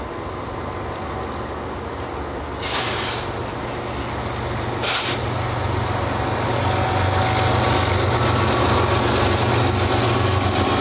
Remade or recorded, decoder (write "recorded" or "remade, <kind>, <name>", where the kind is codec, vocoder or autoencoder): recorded